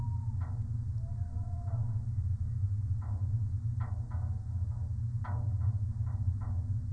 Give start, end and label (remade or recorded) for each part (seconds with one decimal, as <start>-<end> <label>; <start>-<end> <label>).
0.0-6.9 recorded